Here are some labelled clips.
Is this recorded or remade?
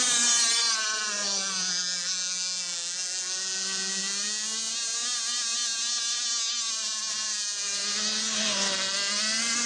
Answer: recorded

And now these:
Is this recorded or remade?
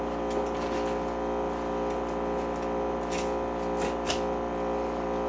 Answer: recorded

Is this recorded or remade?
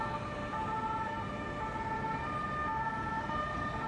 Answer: recorded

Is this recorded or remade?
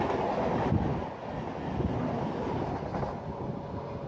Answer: recorded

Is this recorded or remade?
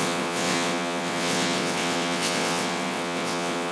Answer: remade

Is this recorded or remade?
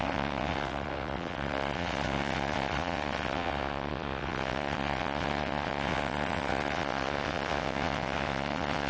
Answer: remade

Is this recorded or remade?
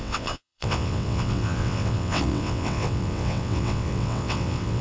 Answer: remade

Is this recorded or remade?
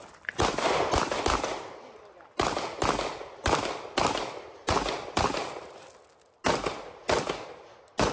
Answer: recorded